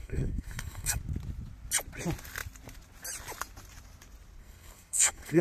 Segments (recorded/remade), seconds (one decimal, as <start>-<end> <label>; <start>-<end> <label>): 0.0-1.0 remade; 1.0-4.4 recorded; 4.4-5.4 remade